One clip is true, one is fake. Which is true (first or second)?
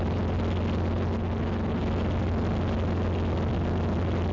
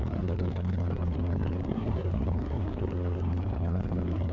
first